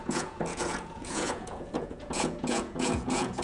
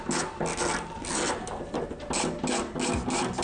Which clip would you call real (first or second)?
second